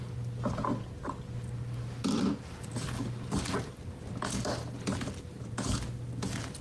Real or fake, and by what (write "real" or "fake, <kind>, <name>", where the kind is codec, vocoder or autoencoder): real